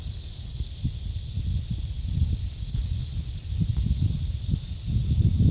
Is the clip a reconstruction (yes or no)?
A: no